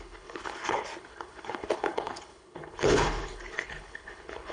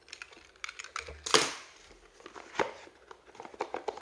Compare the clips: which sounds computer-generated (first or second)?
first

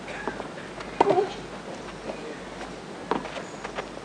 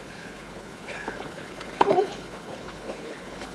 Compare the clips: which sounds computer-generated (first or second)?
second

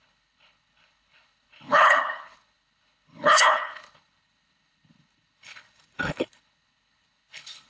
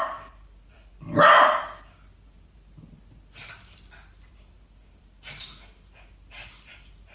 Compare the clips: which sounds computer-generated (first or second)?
first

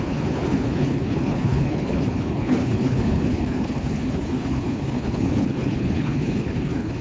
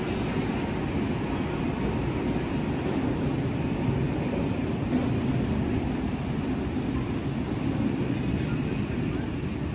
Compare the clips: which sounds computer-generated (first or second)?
first